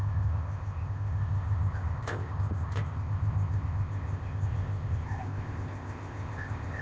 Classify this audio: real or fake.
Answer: fake